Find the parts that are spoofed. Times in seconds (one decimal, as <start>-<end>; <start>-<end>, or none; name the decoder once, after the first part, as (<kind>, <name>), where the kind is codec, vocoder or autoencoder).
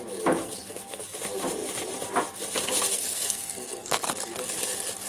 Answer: 0.4-1.2 (codec, SNAC); 2.9-4.0